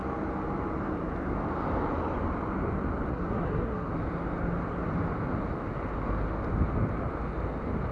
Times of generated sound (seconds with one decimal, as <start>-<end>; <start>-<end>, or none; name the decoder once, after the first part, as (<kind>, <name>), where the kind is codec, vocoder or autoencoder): 3.1-3.9 (codec, SNAC)